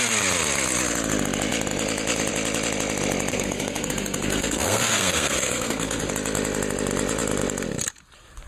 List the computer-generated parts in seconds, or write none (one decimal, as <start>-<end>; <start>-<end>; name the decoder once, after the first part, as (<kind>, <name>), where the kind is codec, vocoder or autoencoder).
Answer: 3.3-6.1 (codec, SNAC)